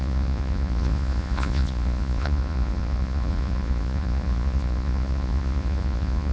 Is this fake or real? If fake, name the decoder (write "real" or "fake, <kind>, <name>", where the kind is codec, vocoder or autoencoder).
fake, vocoder, Vocos